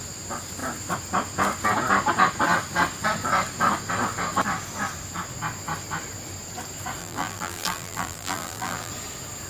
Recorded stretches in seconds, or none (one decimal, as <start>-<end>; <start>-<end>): 0.0-7.0; 8.9-9.5